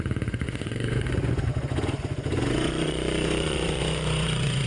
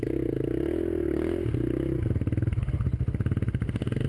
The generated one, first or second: first